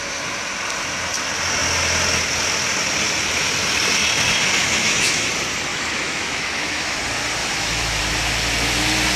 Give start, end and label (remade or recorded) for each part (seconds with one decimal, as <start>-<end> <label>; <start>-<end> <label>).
0.0-4.6 recorded; 4.6-5.3 remade; 5.3-5.7 recorded; 5.7-7.0 remade; 7.0-7.4 recorded; 7.4-8.0 remade; 8.0-9.2 recorded